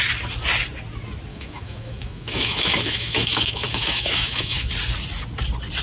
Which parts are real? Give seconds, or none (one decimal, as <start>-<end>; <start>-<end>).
0.0-1.3; 4.7-5.8